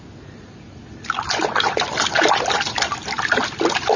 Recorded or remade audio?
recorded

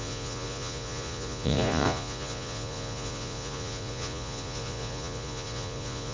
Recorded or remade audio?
remade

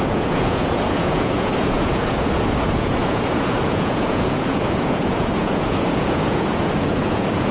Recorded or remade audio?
remade